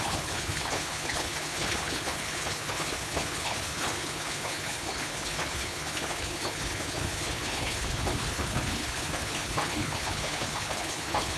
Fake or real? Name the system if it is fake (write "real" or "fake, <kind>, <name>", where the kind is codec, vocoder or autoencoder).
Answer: fake, codec, HILCodec